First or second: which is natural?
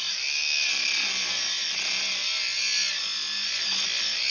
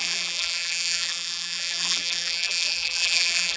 first